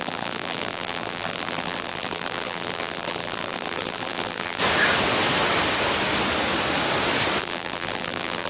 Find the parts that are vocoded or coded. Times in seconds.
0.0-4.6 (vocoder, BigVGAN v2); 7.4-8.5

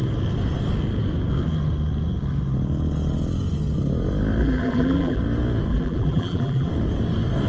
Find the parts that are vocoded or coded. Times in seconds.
4.4-5.2 (vocoder, BigVGAN v2); 5.7-6.7

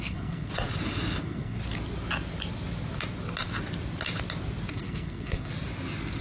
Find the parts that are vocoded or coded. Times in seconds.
0.0-0.5 (codec, SNAC); 1.2-1.6; 4.7-5.5

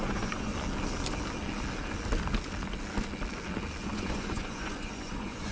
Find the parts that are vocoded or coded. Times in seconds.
0.0-0.5 (vocoder, Vocos); 3.8-5.5